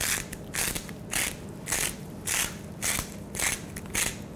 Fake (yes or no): no